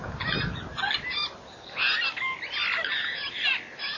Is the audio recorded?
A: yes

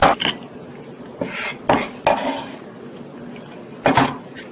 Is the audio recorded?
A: yes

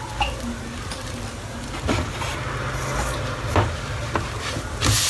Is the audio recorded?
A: yes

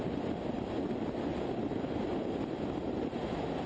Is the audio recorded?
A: yes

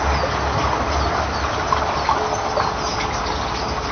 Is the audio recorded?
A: yes